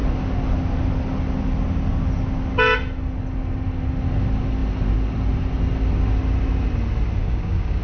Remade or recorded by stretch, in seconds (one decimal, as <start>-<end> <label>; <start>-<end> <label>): 0.0-7.2 recorded; 7.2-7.8 remade